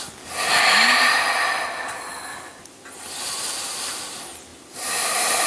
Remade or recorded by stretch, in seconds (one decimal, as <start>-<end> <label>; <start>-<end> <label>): 0.0-4.5 recorded; 4.5-5.5 remade